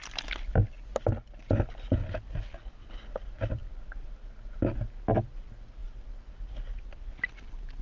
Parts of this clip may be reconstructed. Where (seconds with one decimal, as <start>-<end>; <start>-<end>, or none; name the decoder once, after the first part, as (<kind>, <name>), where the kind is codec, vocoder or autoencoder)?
none

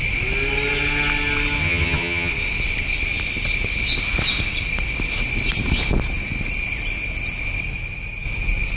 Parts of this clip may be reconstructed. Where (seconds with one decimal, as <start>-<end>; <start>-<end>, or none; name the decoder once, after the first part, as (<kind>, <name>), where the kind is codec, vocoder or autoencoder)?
1.6-2.3 (vocoder, HiFi-GAN)